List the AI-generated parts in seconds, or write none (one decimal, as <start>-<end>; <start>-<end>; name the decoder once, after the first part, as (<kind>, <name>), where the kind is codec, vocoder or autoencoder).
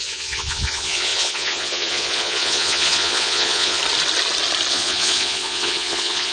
0.0-3.8 (vocoder, Vocos); 4.7-6.3